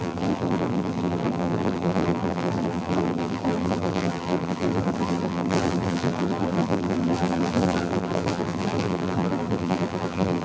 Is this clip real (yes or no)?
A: no